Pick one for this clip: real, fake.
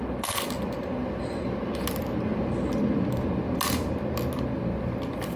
real